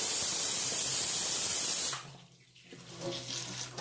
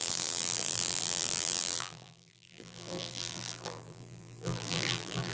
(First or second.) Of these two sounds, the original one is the first